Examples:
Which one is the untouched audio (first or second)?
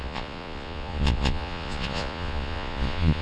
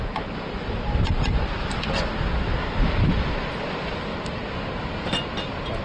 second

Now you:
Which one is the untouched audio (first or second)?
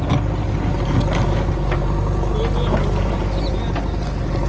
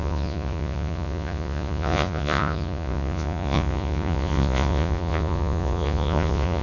first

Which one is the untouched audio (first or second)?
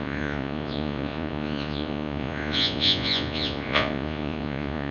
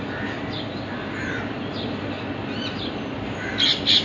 second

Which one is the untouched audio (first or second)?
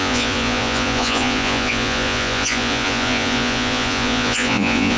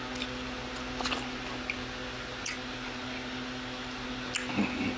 second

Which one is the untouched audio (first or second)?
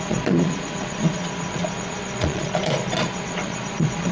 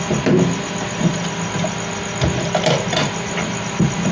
second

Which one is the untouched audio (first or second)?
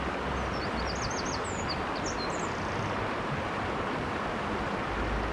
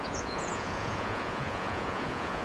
first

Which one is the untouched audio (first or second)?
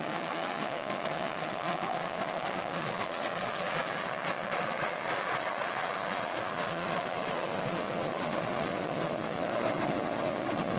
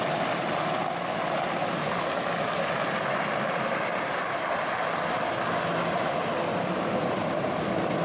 second